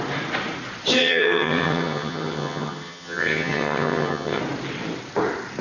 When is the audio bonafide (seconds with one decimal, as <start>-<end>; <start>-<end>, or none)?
0.0-1.0; 4.4-5.6